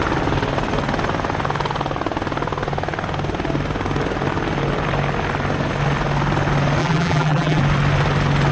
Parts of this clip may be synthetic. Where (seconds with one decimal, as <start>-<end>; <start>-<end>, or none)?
6.8-7.6